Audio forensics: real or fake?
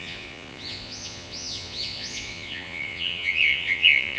fake